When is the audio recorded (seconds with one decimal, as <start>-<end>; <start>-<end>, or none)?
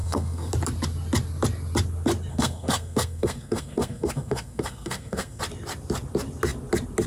0.5-2.3; 5.4-7.1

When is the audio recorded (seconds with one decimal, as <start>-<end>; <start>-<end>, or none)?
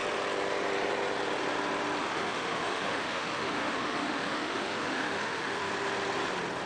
0.0-2.0; 5.7-6.7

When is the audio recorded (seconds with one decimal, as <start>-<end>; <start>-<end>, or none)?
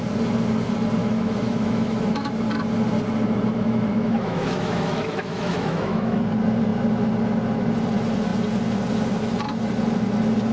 0.0-1.0; 2.3-3.5; 6.2-10.5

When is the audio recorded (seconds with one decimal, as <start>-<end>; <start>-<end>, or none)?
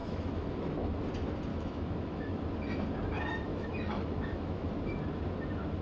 1.0-1.5; 2.4-3.5; 4.7-5.8